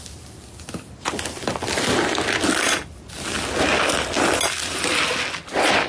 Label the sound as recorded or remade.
recorded